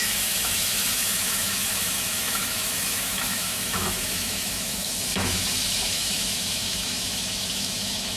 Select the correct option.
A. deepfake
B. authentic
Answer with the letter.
A